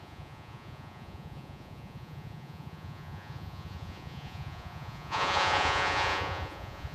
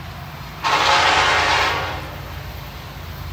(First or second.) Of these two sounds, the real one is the second